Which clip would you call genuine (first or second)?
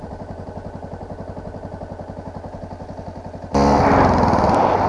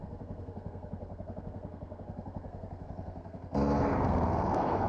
first